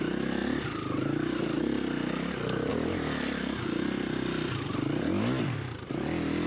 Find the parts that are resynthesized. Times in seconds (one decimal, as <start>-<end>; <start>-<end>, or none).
none

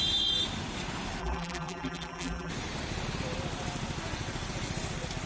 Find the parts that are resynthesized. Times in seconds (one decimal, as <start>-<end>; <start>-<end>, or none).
1.2-2.5

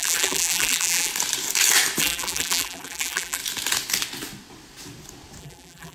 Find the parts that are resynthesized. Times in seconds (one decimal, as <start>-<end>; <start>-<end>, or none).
0.0-1.1; 2.0-3.4; 5.4-5.9

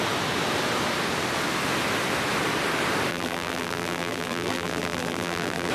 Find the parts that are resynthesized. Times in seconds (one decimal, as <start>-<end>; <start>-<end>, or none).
3.1-5.7

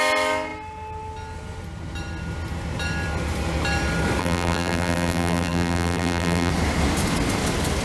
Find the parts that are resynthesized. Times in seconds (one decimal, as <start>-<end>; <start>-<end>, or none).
4.2-6.5